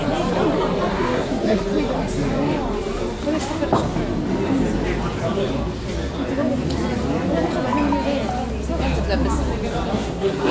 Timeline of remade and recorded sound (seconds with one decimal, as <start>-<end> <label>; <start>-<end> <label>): 0.0-0.9 recorded; 0.9-1.6 remade; 1.6-9.9 recorded; 9.9-10.5 remade